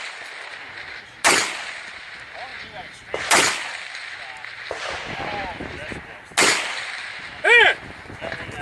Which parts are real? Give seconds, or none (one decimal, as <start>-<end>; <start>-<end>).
0.0-8.6